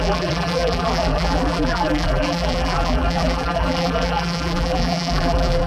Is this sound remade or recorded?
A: remade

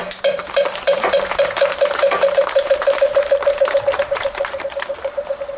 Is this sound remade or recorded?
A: remade